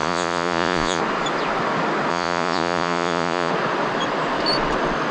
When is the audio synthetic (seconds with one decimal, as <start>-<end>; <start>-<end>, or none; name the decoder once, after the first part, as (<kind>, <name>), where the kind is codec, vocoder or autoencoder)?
0.0-1.0 (vocoder, Vocos); 2.1-3.5